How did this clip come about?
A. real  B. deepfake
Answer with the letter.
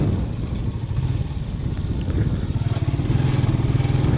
A